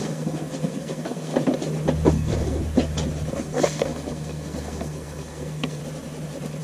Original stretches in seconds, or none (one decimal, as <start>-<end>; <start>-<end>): 1.3-2.1; 2.6-3.3; 5.8-6.6